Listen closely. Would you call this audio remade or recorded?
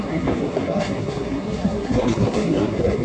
remade